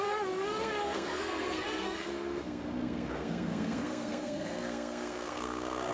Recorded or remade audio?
remade